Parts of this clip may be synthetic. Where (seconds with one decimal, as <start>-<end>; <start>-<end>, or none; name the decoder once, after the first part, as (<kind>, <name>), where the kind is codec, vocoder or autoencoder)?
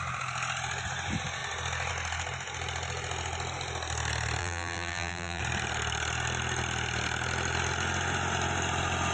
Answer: 4.4-5.4 (vocoder, BigVGAN v2)